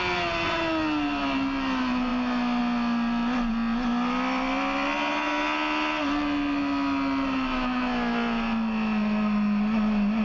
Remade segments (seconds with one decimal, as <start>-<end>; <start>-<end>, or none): none